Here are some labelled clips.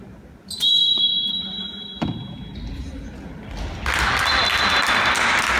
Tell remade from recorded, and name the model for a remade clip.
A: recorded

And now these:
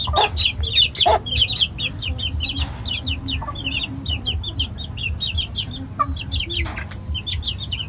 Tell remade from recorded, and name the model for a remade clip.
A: recorded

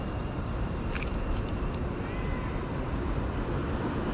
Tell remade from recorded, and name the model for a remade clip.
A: recorded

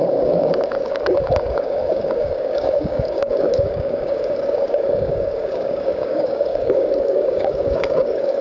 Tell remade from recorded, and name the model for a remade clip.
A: remade, codec, DAC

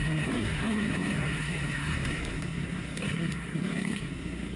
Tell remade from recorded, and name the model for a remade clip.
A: remade, codec, SNAC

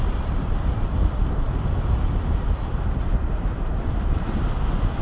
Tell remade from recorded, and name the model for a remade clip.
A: recorded